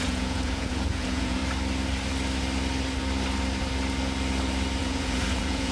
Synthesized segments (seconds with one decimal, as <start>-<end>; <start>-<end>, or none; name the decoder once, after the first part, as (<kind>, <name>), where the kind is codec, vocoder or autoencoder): 0.0-1.4 (vocoder, Vocos); 4.8-5.7